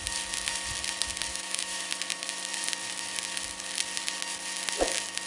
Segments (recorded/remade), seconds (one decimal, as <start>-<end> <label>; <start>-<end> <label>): 0.0-1.3 recorded; 1.3-1.9 remade; 1.9-5.3 recorded

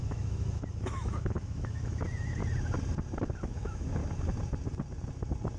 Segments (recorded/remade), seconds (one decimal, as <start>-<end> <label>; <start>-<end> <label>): 0.0-2.4 remade; 2.4-3.3 recorded; 3.3-4.0 remade; 4.0-5.6 recorded

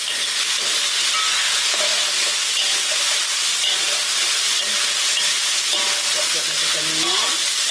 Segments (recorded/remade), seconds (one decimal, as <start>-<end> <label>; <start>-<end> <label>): 0.0-7.7 recorded

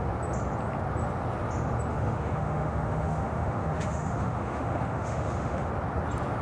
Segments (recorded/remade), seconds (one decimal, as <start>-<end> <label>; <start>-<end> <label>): 0.0-1.9 recorded; 1.9-5.7 remade; 5.7-6.4 recorded

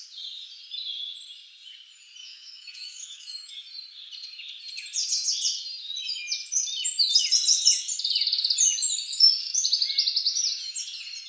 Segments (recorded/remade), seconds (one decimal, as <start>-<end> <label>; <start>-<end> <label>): 0.0-2.2 recorded; 2.2-3.5 remade; 3.5-11.3 recorded

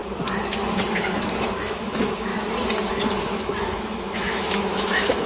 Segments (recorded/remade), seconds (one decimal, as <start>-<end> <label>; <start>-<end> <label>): 0.0-0.9 recorded; 0.9-2.3 remade; 2.3-2.9 recorded; 2.9-5.3 remade

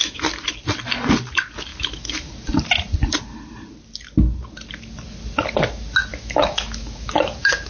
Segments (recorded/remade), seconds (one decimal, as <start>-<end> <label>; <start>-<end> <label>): 0.0-0.5 remade; 0.5-1.7 recorded; 1.7-2.3 remade; 2.3-6.1 recorded; 6.1-7.7 remade

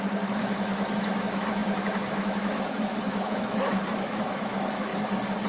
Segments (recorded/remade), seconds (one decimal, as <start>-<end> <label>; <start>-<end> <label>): 0.0-4.9 remade; 4.9-5.5 recorded